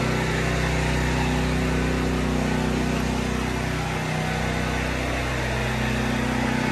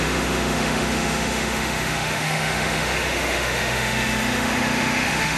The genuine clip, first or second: first